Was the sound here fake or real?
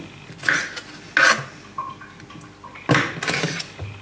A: real